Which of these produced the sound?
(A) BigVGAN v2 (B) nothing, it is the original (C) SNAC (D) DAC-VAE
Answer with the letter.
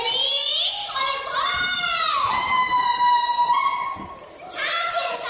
A